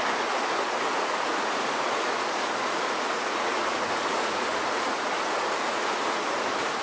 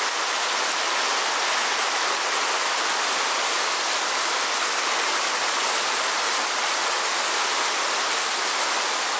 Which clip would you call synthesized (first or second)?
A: first